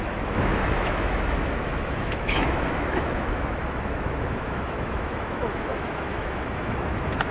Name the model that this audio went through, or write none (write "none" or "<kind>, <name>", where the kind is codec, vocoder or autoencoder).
autoencoder, DAC-VAE